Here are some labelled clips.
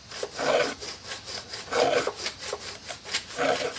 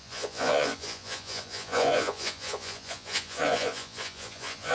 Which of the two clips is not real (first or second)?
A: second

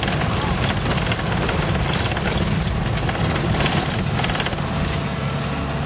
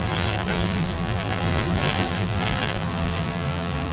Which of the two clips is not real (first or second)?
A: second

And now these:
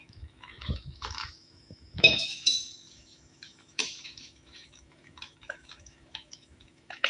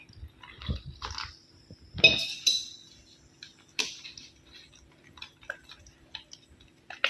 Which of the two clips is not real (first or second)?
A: first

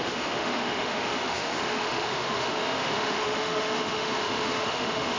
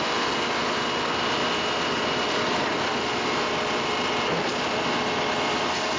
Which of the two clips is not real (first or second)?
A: first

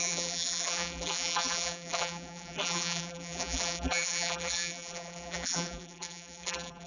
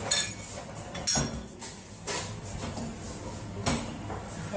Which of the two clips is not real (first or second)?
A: first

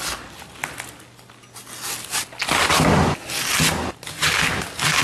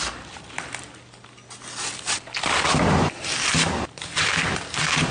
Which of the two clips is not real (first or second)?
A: second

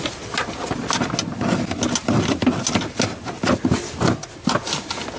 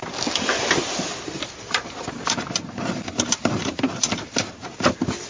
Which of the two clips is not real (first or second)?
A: second